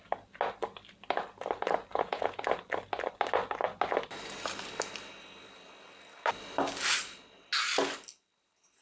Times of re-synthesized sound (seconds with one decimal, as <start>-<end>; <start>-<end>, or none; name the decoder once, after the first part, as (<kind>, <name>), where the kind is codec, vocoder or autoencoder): 1.9-2.4 (vocoder, Vocos)